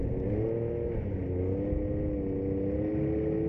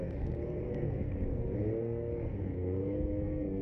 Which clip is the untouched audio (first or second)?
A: first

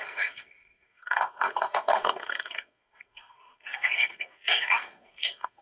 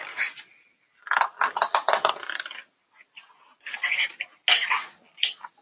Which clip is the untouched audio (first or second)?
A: second